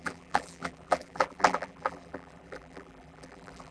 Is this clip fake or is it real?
fake